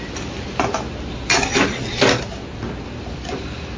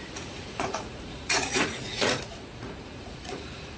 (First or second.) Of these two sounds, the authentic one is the first